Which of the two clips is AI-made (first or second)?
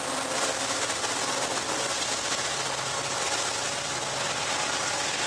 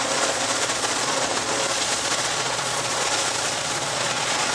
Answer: second